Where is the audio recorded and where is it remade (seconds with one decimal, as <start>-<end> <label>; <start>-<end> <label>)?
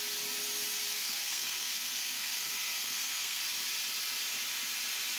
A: 0.0-0.9 recorded; 0.9-3.4 remade; 3.4-5.2 recorded